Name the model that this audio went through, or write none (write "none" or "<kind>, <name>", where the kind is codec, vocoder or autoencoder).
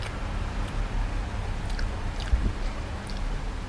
none